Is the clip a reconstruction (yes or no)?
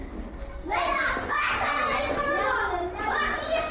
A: no